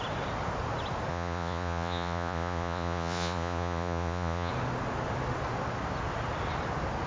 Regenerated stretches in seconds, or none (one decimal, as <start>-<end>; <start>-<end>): 1.1-4.5